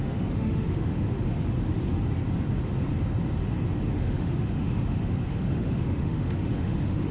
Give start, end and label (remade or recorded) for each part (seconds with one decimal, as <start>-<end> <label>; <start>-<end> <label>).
0.0-1.3 remade; 1.3-3.9 recorded; 3.9-7.1 remade